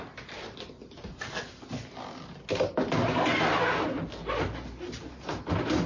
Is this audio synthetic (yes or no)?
no